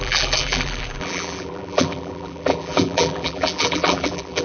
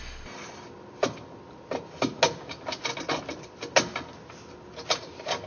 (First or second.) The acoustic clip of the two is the second